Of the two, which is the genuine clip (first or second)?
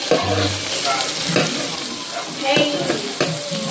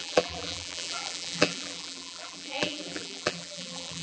first